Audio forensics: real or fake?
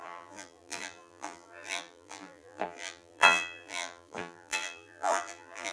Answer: fake